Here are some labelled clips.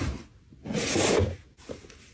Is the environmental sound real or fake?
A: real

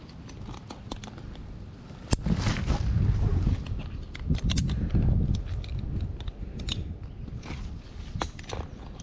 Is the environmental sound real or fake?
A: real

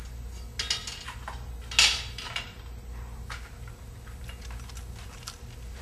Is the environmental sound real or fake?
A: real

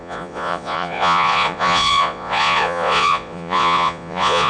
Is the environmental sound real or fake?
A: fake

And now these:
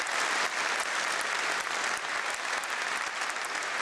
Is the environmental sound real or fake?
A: real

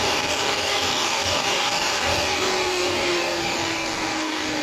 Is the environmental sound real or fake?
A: fake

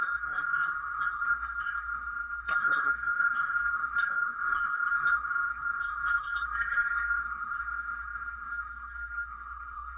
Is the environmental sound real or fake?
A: fake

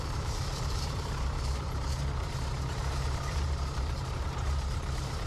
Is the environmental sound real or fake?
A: fake